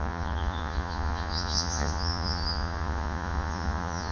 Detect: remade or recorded remade